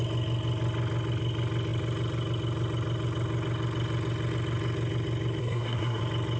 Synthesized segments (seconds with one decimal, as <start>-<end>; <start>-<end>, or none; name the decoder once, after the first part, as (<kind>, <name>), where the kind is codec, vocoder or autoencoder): 5.4-6.0 (codec, SNAC)